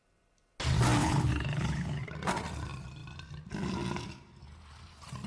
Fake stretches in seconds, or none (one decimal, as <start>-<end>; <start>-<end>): 1.0-2.0